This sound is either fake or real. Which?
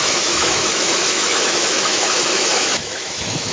fake